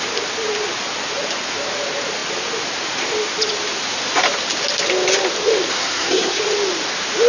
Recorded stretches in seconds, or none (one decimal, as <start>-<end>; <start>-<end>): 0.0-5.7; 6.4-7.3